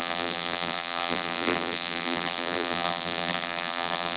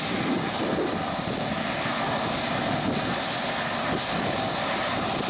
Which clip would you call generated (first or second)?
first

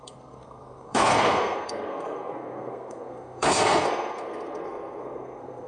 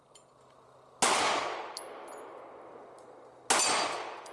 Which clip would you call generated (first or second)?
first